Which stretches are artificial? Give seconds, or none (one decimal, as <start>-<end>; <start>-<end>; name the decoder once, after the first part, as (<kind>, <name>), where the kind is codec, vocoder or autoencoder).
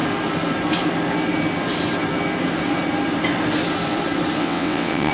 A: 4.4-5.1 (vocoder, WaveNeXt)